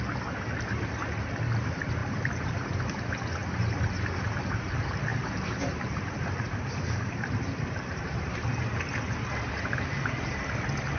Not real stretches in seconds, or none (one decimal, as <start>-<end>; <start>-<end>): 2.0-2.8; 5.1-8.6; 9.9-10.4